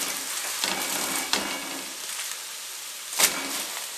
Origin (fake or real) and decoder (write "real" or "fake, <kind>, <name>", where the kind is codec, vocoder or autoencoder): fake, vocoder, BigVGAN v2